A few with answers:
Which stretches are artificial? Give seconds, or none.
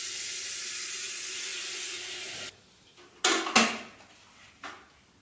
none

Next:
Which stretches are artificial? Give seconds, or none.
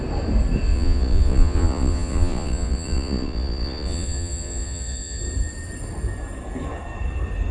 0.7-5.2 (vocoder, Vocos)